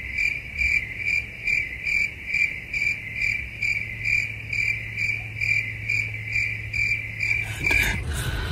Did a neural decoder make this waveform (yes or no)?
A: no